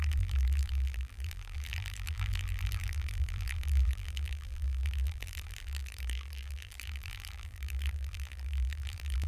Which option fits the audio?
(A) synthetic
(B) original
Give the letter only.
A